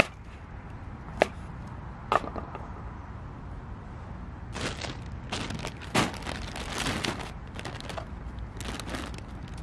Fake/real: real